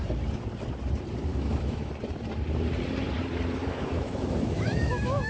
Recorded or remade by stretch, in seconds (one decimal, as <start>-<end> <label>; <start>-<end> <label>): 0.0-1.3 recorded; 1.3-1.9 remade; 1.9-3.6 recorded; 3.6-5.3 remade